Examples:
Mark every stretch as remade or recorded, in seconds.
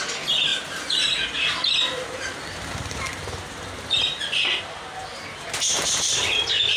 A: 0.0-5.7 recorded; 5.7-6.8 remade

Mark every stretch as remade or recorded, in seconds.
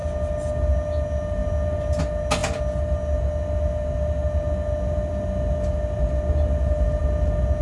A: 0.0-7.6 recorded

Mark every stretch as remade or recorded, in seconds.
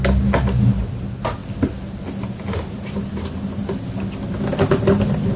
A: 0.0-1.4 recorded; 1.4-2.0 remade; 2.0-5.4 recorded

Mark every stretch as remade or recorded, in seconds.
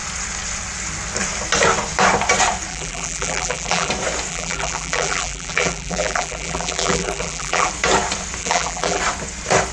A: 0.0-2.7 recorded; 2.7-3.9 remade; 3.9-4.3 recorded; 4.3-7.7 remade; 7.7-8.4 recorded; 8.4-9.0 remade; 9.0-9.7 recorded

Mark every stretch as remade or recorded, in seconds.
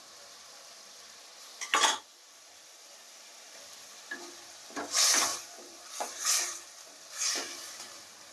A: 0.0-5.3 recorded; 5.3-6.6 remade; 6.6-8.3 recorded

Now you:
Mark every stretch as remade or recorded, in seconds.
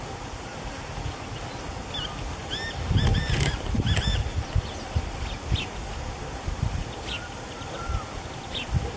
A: 0.0-3.1 recorded; 3.1-5.2 remade; 5.2-6.2 recorded; 6.2-7.8 remade; 7.8-9.0 recorded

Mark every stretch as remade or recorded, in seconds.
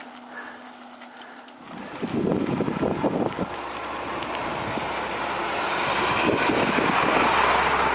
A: 0.0-7.9 recorded